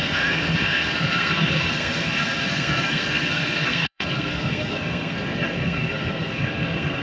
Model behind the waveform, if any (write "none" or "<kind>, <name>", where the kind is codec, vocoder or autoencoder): codec, SNAC